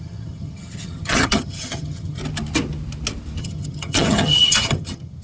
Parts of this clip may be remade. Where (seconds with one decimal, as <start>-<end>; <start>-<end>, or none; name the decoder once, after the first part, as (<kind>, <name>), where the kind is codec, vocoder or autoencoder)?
0.0-2.2 (vocoder, HiFi-GAN); 3.4-5.2